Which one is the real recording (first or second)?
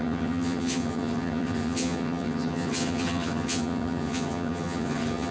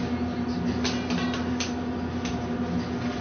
second